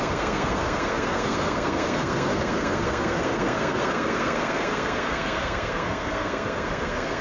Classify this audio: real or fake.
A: fake